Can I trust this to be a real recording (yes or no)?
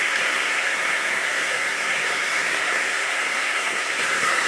no